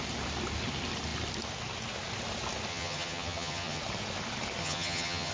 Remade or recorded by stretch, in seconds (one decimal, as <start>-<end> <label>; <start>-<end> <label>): 0.0-2.7 recorded; 2.7-3.8 remade; 3.8-4.6 recorded; 4.6-5.3 remade